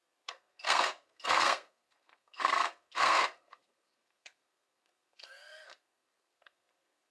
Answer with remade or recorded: remade